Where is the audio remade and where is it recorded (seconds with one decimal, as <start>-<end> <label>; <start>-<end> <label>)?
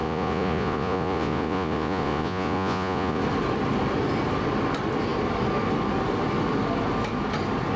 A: 0.0-3.2 remade; 3.2-7.8 recorded